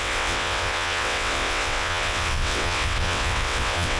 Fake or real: fake